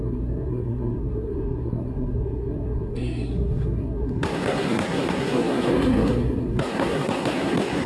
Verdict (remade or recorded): remade